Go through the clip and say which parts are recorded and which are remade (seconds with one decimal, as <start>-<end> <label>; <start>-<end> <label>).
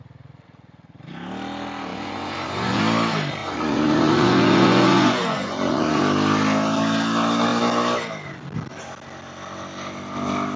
0.0-1.9 recorded; 1.9-2.8 remade; 2.8-3.4 recorded; 3.4-6.0 remade; 6.0-10.6 recorded